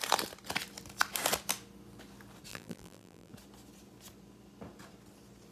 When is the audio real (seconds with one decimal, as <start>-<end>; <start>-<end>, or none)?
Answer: 0.0-2.5; 3.3-5.5